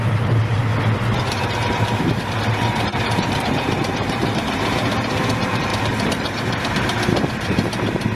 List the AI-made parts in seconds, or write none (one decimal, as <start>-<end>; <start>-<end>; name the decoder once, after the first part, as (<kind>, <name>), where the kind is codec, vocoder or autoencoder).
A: 0.0-0.6 (vocoder, BigVGAN v2); 1.3-8.1